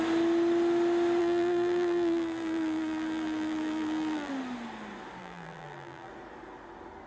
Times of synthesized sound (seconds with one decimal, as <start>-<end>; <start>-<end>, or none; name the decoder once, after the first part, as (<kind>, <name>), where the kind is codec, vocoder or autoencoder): 1.2-4.3 (vocoder, BigVGAN v2); 5.2-6.1